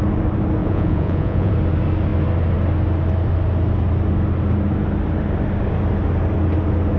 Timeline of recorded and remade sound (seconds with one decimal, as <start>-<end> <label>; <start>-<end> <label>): 0.0-0.6 recorded; 0.6-1.5 remade; 1.5-7.0 recorded